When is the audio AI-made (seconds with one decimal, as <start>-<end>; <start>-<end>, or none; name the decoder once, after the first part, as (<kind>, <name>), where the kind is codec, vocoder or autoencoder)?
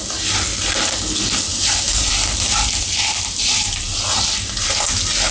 1.5-2.1 (vocoder, BigVGAN v2)